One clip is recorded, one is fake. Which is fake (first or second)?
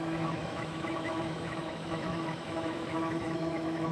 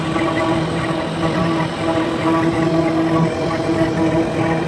first